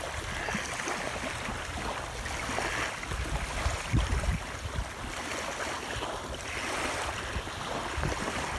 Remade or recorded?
recorded